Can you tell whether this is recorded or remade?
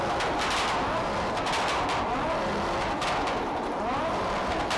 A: recorded